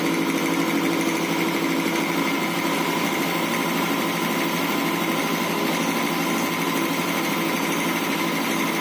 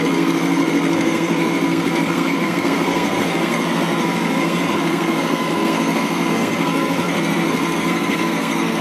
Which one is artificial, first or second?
second